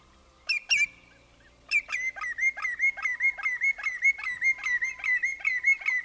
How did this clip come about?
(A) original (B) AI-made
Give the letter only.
A